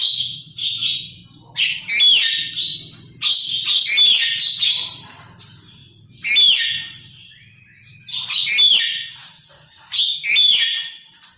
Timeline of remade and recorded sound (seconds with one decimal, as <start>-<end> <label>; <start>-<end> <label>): 0.0-11.4 recorded